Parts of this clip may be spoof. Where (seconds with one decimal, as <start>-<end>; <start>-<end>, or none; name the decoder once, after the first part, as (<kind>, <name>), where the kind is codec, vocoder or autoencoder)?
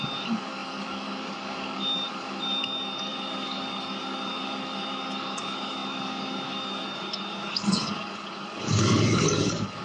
0.0-9.8 (codec, DAC)